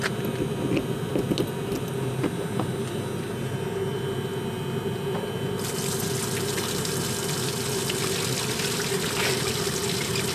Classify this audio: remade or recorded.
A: recorded